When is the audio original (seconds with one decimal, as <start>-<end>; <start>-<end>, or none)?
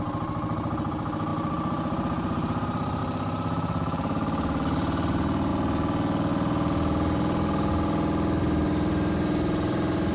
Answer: 5.5-6.3; 7.7-8.4